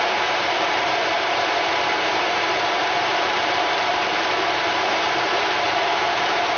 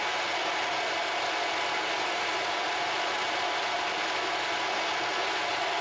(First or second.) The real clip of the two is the second